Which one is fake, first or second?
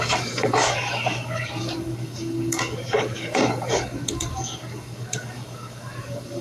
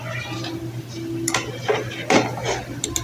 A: first